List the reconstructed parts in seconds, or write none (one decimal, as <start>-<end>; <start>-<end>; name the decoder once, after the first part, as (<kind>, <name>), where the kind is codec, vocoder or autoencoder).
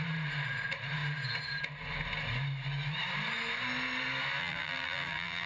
4.4-5.5 (vocoder, BigVGAN v2)